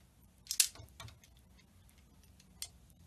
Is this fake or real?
real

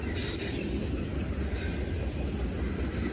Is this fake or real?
fake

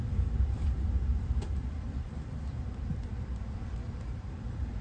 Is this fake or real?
fake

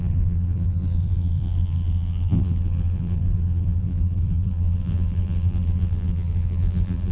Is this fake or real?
fake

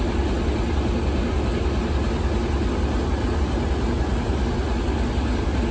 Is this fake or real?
real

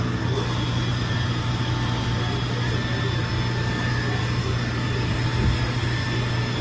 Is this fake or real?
real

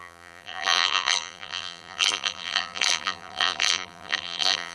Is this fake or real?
fake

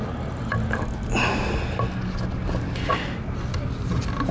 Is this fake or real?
real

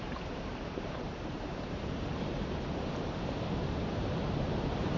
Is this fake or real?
fake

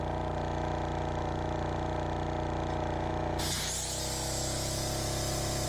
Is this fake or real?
real